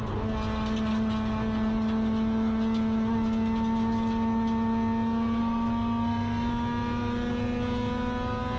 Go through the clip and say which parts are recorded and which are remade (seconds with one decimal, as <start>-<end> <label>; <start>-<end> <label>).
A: 0.0-5.4 recorded; 5.4-6.5 remade; 6.5-8.6 recorded